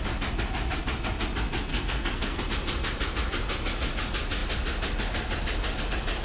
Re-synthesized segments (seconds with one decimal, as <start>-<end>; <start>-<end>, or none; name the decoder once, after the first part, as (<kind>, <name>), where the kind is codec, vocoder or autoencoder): 1.7-2.4 (codec, SNAC)

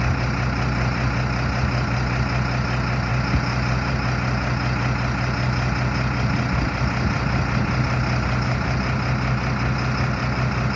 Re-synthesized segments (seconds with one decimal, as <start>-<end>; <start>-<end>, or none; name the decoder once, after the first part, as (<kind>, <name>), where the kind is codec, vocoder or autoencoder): none